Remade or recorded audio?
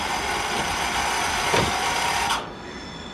recorded